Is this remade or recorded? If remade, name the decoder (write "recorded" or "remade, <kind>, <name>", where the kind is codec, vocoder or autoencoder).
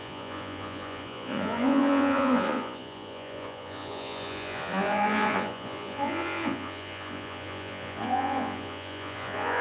remade, vocoder, Vocos